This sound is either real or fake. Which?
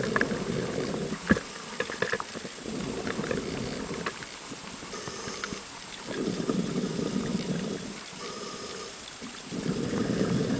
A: real